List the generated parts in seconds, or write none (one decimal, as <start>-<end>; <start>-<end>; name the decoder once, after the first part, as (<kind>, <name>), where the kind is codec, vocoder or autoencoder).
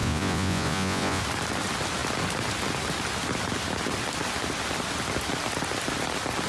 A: 0.0-1.2 (vocoder, Vocos)